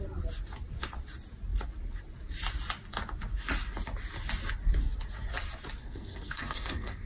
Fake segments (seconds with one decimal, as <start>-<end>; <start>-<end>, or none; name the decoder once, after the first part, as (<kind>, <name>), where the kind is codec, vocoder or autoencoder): 5.8-7.1 (codec, SNAC)